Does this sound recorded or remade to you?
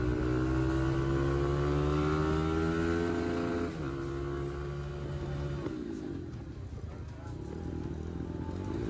recorded